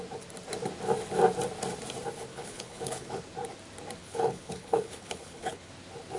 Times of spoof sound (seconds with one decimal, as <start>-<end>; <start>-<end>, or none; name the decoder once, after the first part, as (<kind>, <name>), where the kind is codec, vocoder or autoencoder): 2.3-3.2 (codec, HILCodec); 4.0-5.7